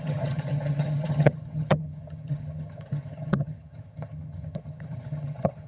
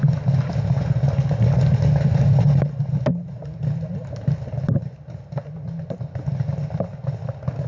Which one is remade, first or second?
first